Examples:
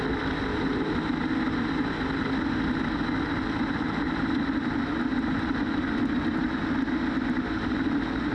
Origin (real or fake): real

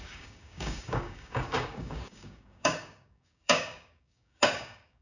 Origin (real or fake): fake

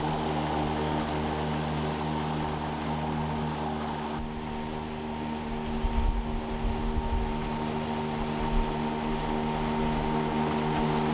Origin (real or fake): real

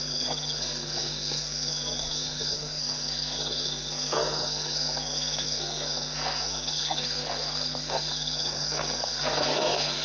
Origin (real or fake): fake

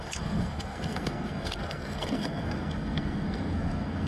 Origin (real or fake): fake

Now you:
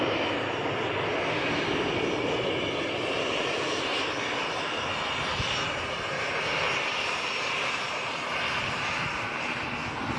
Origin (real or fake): real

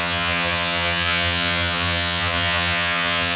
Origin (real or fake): fake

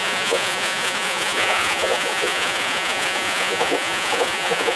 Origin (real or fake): fake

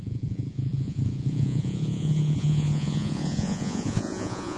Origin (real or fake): fake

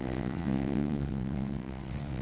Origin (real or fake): fake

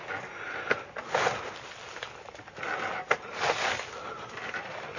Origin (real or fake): real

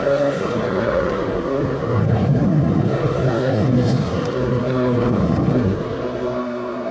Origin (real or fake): fake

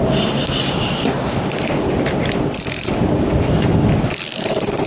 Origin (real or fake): fake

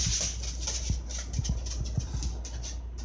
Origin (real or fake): real